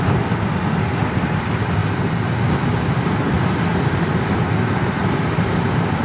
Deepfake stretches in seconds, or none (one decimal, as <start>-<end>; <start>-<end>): 5.0-6.0